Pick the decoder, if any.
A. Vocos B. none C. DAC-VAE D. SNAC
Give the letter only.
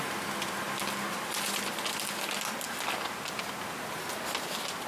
B